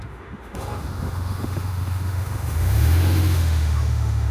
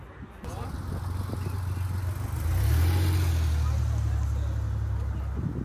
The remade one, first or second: first